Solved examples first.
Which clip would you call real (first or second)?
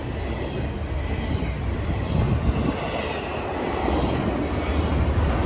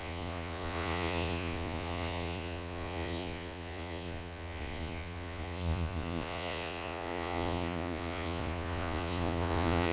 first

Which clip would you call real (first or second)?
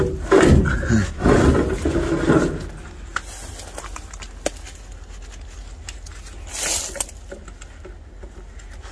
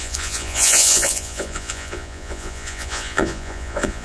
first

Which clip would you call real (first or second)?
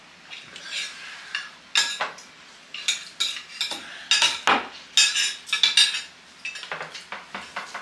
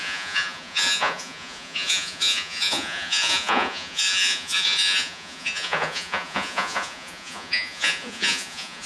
first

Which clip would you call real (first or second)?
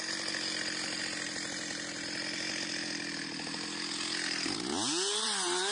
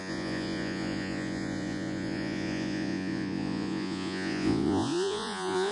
first